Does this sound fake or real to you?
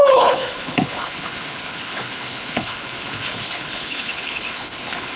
fake